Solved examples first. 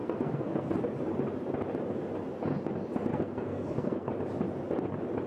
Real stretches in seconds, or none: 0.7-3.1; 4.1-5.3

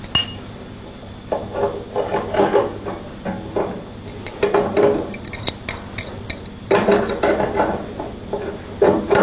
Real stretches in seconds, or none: 0.0-9.2